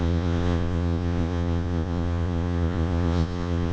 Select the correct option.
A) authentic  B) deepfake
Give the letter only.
B